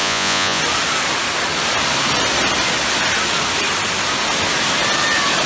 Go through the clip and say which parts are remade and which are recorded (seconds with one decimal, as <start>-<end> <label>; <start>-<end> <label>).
0.0-0.6 remade; 0.6-5.5 recorded